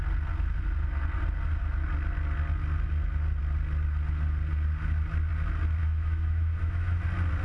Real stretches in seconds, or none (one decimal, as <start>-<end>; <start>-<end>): 0.0-5.8; 7.0-7.4